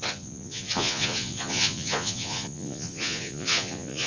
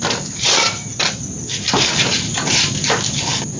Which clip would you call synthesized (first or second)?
first